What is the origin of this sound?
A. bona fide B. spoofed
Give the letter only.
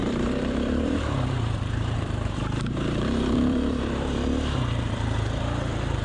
B